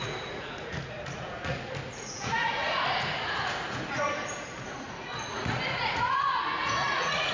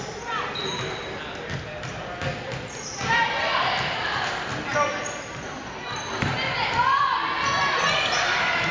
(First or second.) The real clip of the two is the second